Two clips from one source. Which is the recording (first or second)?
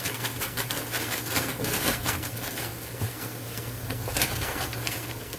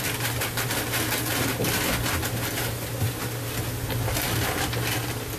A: second